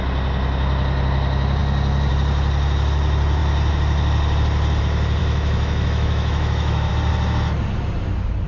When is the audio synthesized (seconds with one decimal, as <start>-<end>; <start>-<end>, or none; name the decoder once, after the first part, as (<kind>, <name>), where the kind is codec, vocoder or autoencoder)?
5.2-6.9 (autoencoder, DAC-VAE)